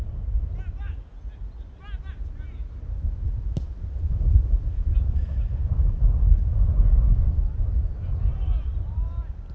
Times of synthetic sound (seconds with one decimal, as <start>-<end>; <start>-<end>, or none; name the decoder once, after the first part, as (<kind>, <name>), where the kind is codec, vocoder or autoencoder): 2.6-6.0 (vocoder, BigVGAN v2); 7.1-7.9; 8.3-9.5